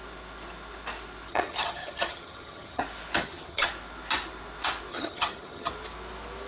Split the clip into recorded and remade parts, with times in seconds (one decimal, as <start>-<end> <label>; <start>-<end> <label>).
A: 0.0-1.3 recorded; 1.3-2.8 remade; 2.8-3.2 recorded; 3.2-3.7 remade; 3.7-4.9 recorded; 4.9-5.7 remade; 5.7-6.5 recorded